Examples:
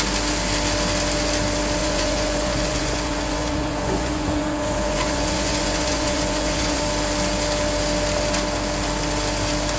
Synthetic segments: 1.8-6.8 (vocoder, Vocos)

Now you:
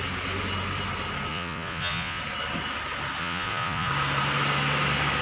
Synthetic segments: 1.3-2.2 (vocoder, Vocos); 3.2-3.9

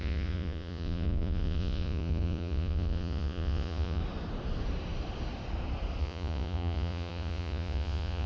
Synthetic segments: 0.0-4.0 (vocoder, Vocos); 6.0-8.3

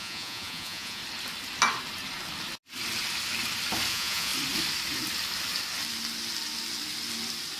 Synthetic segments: 0.0-1.0 (vocoder, Vocos); 3.9-4.3